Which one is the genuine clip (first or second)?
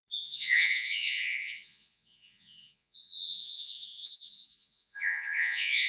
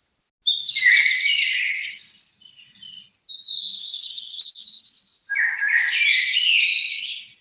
second